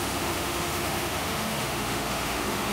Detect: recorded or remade remade